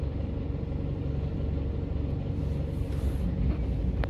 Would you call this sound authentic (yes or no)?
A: yes